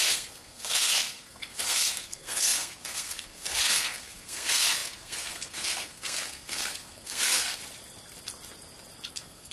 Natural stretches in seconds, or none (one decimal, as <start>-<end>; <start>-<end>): 7.6-9.1